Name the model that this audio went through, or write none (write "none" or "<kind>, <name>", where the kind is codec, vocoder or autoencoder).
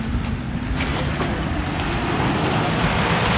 none